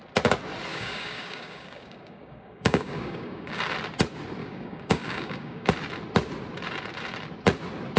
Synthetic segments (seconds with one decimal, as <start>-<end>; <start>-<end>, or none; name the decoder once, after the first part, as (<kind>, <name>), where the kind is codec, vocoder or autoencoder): 0.7-3.6 (codec, DAC); 4.4-5.7